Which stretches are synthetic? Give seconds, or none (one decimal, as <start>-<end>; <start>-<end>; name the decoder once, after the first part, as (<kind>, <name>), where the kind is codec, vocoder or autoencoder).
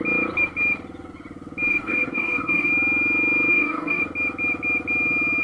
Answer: 1.7-2.7 (codec, DAC); 3.5-4.0